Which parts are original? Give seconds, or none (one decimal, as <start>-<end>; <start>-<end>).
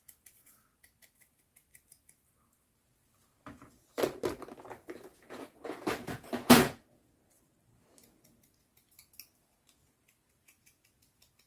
0.0-5.1; 7.1-11.5